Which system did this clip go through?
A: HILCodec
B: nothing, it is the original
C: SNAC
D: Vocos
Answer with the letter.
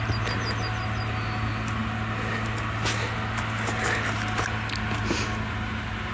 B